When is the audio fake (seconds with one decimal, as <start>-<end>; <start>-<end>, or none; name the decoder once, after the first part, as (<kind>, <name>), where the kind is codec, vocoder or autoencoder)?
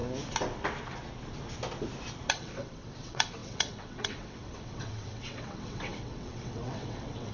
2.3-7.3 (vocoder, WaveNeXt)